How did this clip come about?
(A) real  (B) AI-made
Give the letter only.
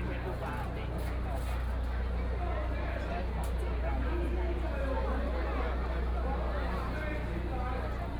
A